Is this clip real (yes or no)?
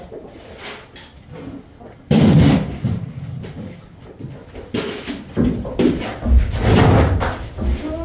yes